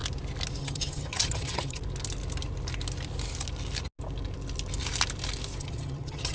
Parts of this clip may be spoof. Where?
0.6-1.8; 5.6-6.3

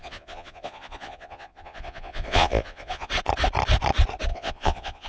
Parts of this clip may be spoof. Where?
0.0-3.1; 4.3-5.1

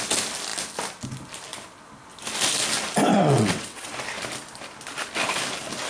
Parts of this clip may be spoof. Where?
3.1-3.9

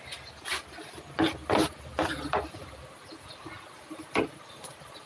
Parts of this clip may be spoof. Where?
none

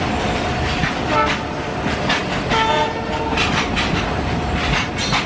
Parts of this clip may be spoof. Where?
none